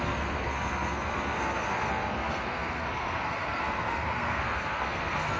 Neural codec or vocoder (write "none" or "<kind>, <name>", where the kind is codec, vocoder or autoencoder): codec, SNAC